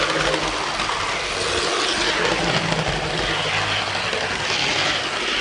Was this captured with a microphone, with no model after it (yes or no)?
yes